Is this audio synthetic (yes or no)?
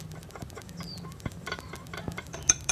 yes